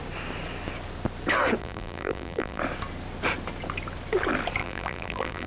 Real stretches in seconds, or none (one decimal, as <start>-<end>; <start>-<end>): 0.0-1.6; 2.6-4.6